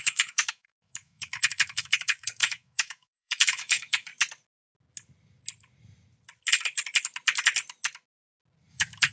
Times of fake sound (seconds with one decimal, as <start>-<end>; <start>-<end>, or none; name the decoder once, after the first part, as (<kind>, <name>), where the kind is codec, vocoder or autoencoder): 0.0-4.1 (autoencoder, DAC-VAE); 8.7-9.1